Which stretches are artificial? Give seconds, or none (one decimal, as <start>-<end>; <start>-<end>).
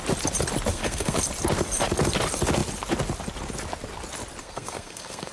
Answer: 0.7-1.2; 4.4-5.3